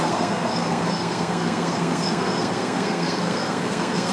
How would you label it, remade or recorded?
remade